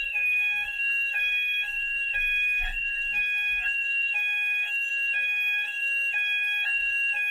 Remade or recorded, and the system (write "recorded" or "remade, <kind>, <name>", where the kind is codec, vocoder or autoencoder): remade, codec, SNAC